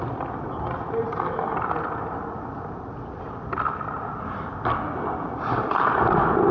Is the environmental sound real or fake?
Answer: real